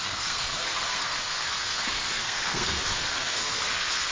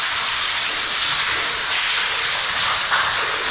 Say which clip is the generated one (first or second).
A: first